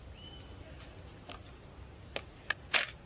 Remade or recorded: recorded